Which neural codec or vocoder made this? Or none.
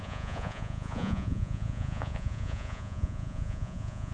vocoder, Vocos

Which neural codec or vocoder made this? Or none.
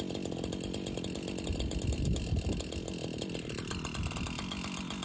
none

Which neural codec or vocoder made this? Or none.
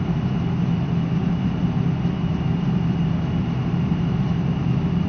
none